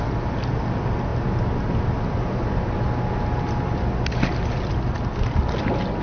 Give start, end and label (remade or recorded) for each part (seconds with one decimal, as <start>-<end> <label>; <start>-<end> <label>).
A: 0.0-6.0 recorded